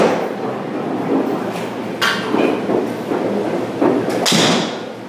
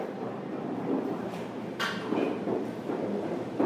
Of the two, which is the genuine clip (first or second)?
first